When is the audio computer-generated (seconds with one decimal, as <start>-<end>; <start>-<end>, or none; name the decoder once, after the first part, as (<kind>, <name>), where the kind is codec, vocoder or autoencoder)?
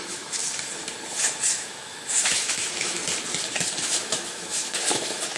0.0-0.4 (autoencoder, DAC-VAE); 1.5-3.0; 3.8-5.4